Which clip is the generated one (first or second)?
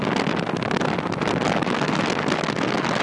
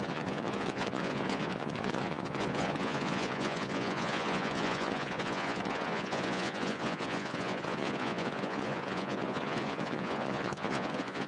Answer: second